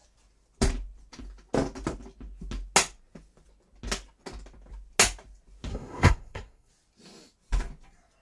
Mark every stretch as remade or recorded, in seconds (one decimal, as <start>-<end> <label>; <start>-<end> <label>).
0.0-5.7 recorded; 5.7-6.7 remade; 6.7-8.2 recorded